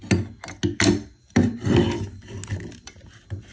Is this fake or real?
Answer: real